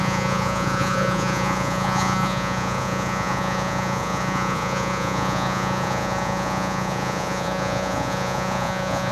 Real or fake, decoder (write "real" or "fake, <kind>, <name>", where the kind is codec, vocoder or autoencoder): fake, vocoder, Vocos